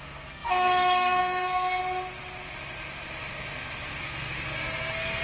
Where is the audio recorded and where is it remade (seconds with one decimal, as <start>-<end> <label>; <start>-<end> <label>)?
0.0-1.8 remade; 1.8-4.0 recorded; 4.0-5.2 remade